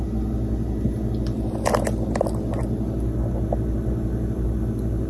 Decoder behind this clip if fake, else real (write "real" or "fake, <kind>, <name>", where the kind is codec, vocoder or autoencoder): real